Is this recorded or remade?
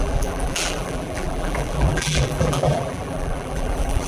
remade